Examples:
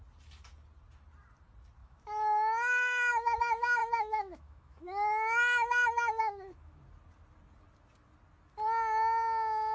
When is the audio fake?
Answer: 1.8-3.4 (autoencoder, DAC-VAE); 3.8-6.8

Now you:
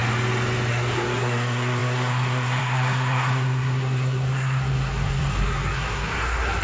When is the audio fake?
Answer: 0.7-6.6 (codec, SNAC)